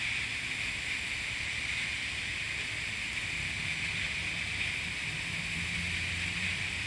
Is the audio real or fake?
real